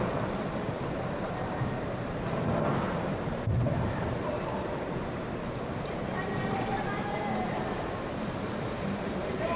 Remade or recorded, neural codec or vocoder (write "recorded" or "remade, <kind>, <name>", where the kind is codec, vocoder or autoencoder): remade, vocoder, BigVGAN v2